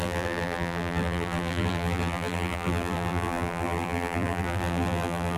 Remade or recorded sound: remade